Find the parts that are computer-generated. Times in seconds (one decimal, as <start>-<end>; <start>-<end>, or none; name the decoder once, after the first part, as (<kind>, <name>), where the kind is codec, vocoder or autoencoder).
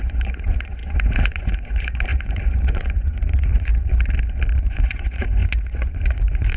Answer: 0.0-3.7 (vocoder, Vocos); 4.6-6.6